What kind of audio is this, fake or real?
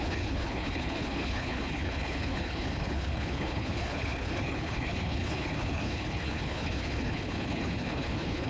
fake